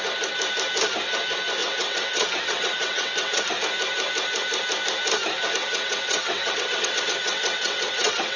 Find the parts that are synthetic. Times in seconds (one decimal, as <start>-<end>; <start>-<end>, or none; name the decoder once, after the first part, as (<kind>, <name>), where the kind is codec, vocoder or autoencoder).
1.6-3.4 (vocoder, WaveNeXt); 5.6-8.4